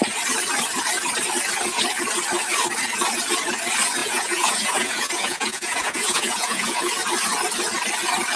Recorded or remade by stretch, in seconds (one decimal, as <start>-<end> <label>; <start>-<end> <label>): 0.0-4.0 recorded; 4.0-6.9 remade; 6.9-8.4 recorded